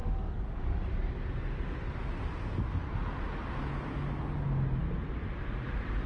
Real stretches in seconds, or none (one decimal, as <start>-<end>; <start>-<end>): 1.1-6.1